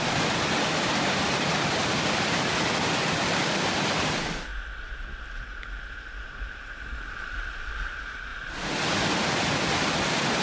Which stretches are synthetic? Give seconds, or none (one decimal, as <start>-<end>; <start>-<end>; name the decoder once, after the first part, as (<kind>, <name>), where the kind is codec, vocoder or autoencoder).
0.0-4.5 (vocoder, BigVGAN v2); 5.7-10.4